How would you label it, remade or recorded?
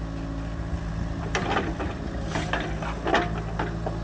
recorded